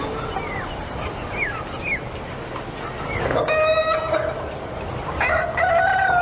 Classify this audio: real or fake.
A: real